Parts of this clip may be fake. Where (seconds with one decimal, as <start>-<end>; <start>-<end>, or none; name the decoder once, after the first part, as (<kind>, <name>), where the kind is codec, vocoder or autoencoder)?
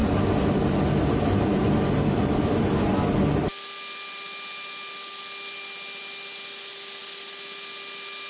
none